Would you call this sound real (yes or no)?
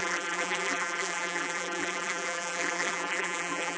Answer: no